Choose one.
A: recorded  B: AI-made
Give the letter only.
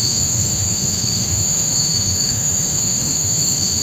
B